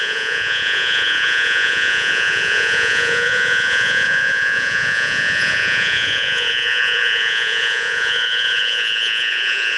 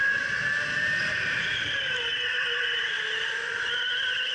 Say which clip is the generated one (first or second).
first